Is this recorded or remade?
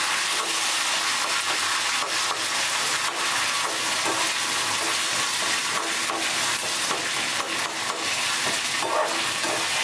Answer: recorded